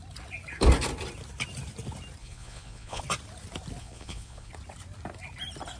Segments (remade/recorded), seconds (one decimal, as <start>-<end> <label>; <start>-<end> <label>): 0.0-2.2 recorded; 2.2-3.0 remade; 3.0-3.8 recorded; 3.8-4.5 remade; 4.5-5.8 recorded